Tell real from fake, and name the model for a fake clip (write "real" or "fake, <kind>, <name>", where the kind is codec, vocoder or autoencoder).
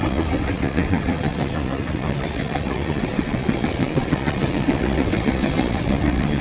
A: fake, vocoder, WaveNeXt